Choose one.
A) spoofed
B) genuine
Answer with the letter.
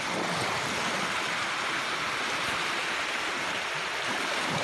B